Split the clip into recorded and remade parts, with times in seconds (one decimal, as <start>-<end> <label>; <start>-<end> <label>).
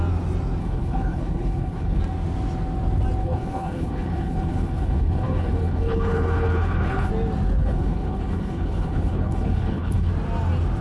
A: 0.0-0.6 recorded; 0.6-2.0 remade; 2.0-3.2 recorded; 3.2-7.1 remade; 7.1-7.6 recorded; 7.6-10.1 remade; 10.1-10.8 recorded